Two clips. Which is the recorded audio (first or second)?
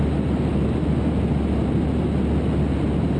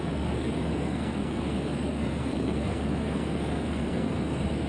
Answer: first